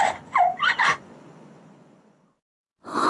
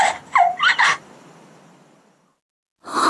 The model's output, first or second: first